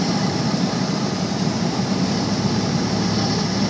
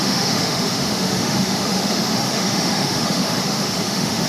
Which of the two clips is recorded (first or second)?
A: first